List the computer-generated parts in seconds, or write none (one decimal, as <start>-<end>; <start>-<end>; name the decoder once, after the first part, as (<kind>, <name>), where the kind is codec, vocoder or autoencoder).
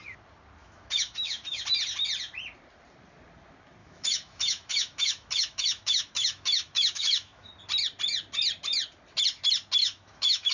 0.6-1.6 (autoencoder, DAC-VAE); 3.8-7.5; 9.8-10.5